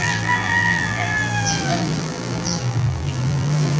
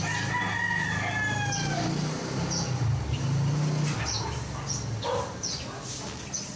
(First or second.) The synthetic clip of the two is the first